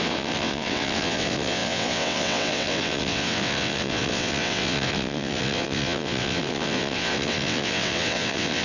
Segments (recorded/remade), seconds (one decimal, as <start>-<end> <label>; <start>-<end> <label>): 0.0-8.6 remade